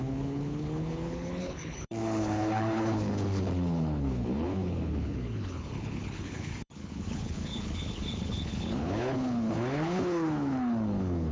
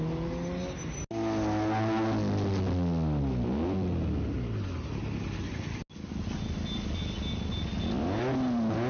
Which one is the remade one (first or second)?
first